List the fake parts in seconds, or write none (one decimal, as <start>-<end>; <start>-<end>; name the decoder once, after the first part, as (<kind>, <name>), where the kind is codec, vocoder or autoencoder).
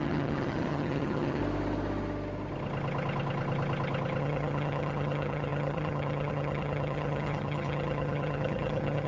0.0-1.4 (vocoder, HiFi-GAN); 4.2-9.1